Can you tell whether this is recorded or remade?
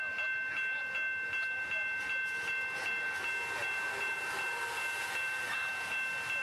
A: recorded